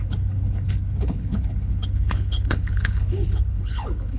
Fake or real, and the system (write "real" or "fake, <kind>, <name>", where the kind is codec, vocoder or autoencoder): fake, codec, HILCodec